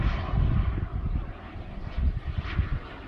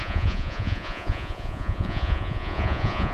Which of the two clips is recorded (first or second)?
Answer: first